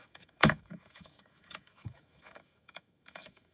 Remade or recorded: remade